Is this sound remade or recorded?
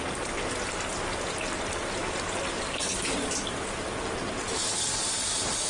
recorded